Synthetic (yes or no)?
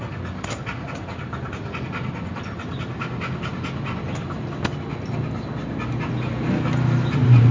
no